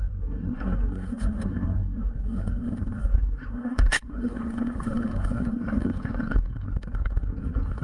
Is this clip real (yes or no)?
no